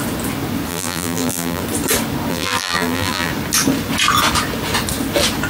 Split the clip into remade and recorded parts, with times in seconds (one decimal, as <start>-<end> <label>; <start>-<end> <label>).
0.0-0.7 recorded; 0.7-1.6 remade; 1.6-2.3 recorded; 2.3-3.3 remade; 3.3-5.5 recorded